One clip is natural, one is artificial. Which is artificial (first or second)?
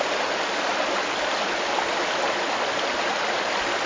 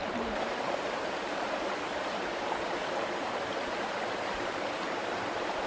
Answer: second